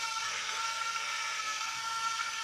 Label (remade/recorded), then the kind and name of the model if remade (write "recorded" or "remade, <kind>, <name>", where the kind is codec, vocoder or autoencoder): remade, codec, SNAC